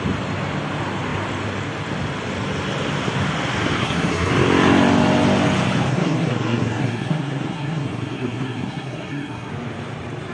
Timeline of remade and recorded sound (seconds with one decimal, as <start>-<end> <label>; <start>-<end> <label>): 0.0-3.8 recorded; 3.8-4.3 remade; 4.3-5.9 recorded; 5.9-9.5 remade; 9.5-10.3 recorded